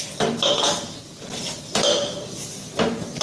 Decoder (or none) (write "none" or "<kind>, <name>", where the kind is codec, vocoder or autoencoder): none